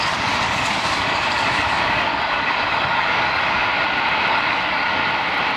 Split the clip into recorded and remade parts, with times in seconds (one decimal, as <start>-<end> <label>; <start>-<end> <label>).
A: 0.0-3.7 remade; 3.7-4.3 recorded; 4.3-5.0 remade; 5.0-5.6 recorded